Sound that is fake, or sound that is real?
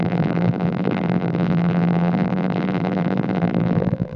fake